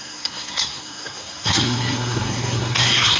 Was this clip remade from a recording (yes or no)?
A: yes